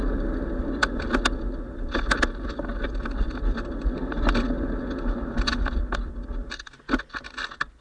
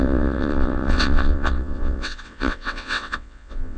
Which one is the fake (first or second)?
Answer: second